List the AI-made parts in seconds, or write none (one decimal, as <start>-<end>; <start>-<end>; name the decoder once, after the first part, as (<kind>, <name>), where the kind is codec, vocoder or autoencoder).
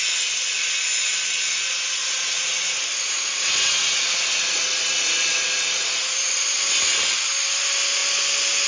2.0-6.5 (vocoder, Vocos)